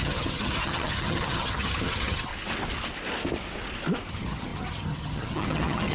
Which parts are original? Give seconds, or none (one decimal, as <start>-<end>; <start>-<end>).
2.3-4.1